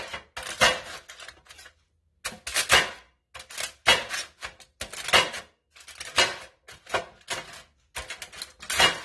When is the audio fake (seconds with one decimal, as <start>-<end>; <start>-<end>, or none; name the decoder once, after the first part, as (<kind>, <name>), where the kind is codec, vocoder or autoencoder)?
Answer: none